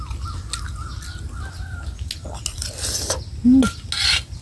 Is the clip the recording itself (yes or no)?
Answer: yes